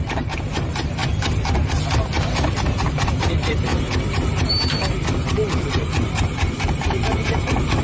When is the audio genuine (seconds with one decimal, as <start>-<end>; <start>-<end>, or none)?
1.0-2.8; 3.7-5.7